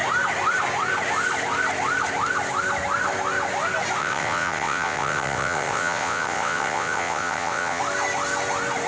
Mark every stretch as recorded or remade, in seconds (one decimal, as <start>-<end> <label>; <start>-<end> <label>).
0.0-4.0 recorded; 4.0-7.8 remade; 7.8-8.9 recorded